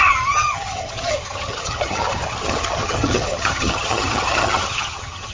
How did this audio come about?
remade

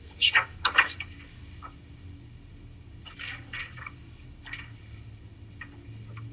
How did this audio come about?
recorded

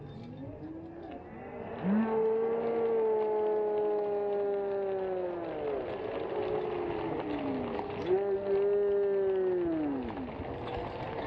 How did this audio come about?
recorded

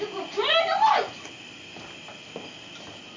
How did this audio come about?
recorded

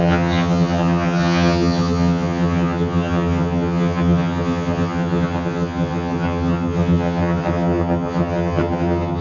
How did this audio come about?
remade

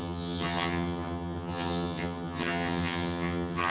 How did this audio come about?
remade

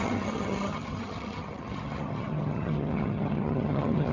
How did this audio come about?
remade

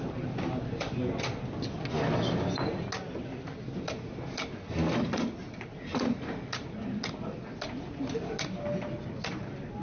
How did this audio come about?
recorded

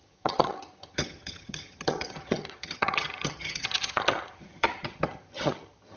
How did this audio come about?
remade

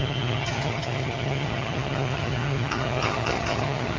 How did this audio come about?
remade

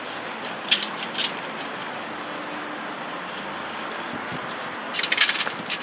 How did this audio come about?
recorded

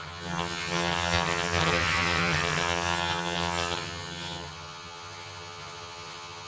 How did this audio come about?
remade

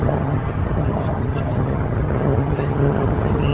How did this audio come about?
remade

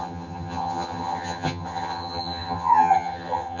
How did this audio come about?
remade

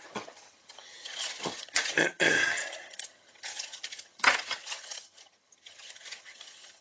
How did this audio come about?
remade